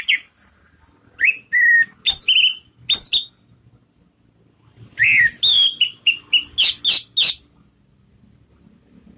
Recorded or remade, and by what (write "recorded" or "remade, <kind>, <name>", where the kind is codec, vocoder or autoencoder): recorded